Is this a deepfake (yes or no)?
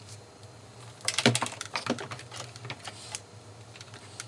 no